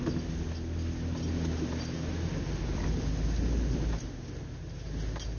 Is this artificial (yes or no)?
no